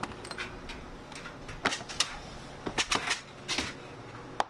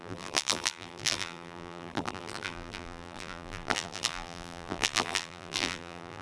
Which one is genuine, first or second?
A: first